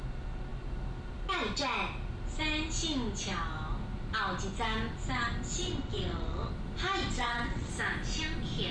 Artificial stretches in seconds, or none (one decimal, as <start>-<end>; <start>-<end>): 5.6-6.5; 7.0-7.7